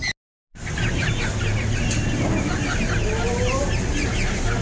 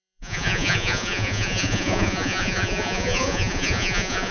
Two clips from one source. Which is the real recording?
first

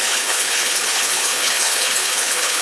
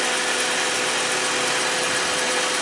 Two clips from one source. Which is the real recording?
second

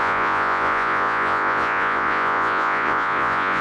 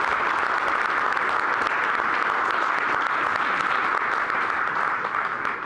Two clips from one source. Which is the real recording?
second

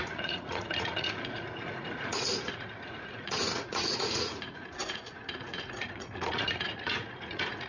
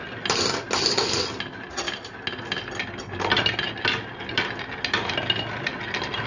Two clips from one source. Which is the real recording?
second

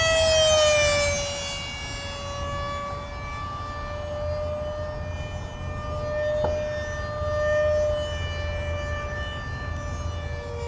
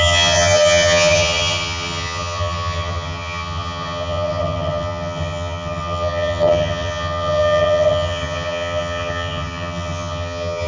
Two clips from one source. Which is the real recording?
first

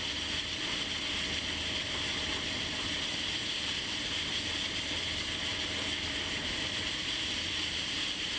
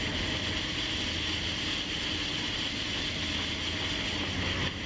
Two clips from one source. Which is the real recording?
second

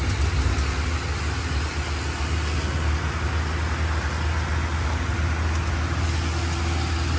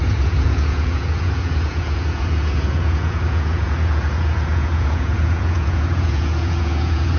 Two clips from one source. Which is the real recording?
first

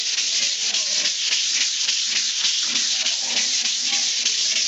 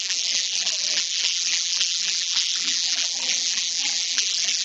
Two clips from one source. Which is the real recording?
first